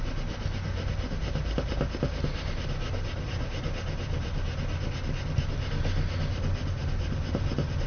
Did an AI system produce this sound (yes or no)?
no